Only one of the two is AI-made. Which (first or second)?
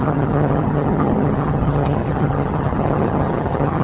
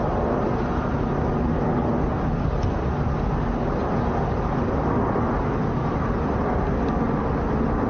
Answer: first